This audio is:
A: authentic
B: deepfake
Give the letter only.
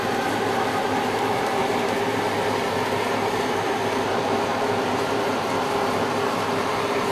B